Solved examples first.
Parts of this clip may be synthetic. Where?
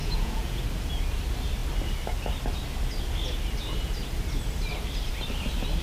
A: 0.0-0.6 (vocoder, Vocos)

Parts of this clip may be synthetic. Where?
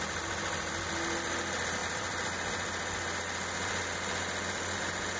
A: none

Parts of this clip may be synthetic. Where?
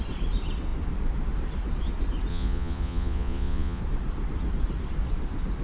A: 2.3-3.8 (vocoder, Vocos)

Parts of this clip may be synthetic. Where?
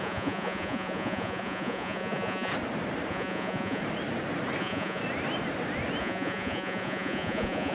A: 0.0-2.5 (vocoder, Vocos); 3.1-3.8; 4.6-5.0; 6.0-7.7